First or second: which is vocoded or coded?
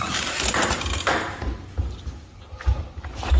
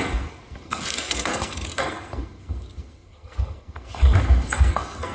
second